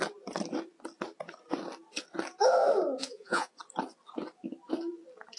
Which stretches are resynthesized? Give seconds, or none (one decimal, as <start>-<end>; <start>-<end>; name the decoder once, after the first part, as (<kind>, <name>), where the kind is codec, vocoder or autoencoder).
3.0-3.5 (vocoder, Vocos)